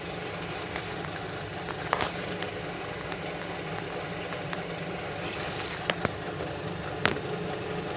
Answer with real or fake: real